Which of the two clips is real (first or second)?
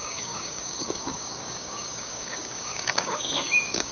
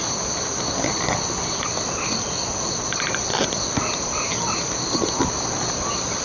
second